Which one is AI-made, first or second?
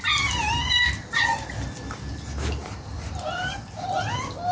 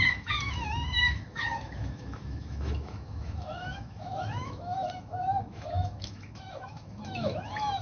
second